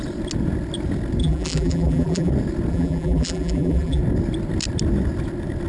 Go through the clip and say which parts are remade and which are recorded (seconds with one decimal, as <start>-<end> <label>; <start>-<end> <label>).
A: 0.0-1.2 recorded; 1.2-2.3 remade; 2.3-2.7 recorded; 2.7-4.0 remade; 4.0-5.7 recorded